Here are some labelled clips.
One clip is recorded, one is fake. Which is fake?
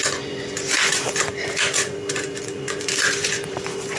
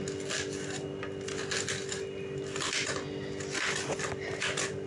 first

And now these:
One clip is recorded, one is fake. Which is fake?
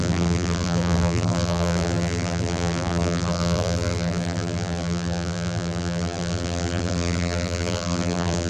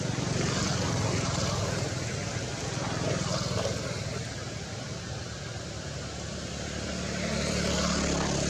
first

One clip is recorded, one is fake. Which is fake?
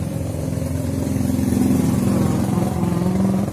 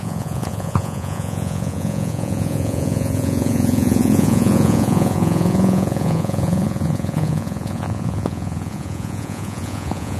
second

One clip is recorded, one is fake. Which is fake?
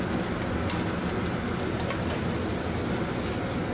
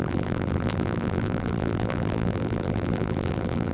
second